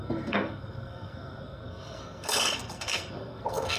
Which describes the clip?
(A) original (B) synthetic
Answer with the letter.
B